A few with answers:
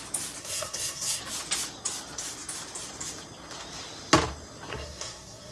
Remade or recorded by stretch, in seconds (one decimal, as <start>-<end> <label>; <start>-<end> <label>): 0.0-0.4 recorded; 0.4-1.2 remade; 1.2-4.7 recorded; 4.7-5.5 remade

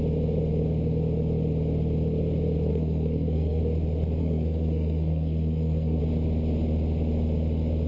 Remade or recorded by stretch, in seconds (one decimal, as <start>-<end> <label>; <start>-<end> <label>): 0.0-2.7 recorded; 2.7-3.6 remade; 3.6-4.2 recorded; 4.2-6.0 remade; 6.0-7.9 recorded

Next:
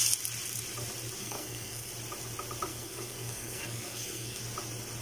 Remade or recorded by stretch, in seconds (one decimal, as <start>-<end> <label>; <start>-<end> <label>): 0.0-1.2 recorded; 1.2-1.9 remade; 1.9-2.7 recorded; 2.7-4.4 remade; 4.4-5.0 recorded

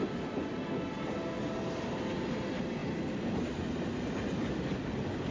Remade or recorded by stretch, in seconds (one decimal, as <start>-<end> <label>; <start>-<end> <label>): 0.0-5.3 recorded

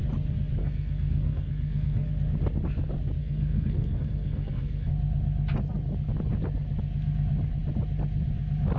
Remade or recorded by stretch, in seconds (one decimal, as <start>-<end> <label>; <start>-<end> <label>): 0.0-0.6 recorded; 0.6-2.1 remade; 2.1-3.2 recorded; 3.2-4.9 remade; 4.9-8.8 recorded

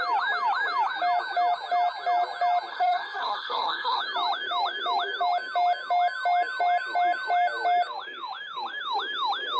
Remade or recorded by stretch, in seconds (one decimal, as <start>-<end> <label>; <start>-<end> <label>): 0.0-2.7 recorded; 2.7-4.0 remade; 4.0-9.6 recorded